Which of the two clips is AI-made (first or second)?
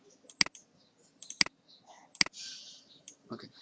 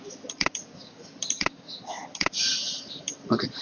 second